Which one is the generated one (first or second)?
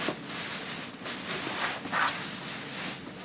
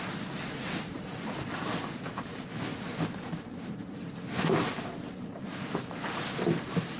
second